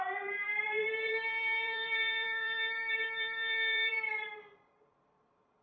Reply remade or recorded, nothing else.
remade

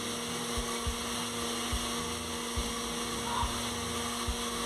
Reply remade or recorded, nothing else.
recorded